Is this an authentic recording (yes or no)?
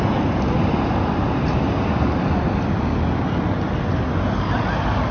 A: yes